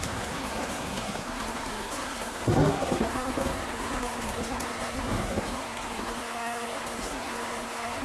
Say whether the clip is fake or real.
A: fake